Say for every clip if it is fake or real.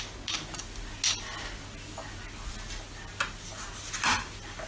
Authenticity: real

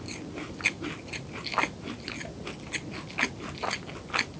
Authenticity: real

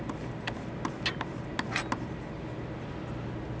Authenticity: real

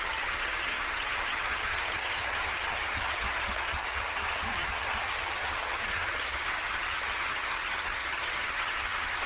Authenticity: fake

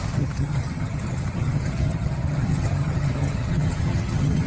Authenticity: fake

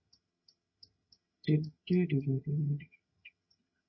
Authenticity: fake